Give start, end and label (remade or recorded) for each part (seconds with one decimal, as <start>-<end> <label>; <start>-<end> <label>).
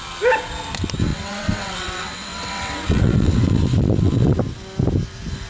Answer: 0.0-1.1 recorded; 1.1-4.4 remade; 4.4-5.5 recorded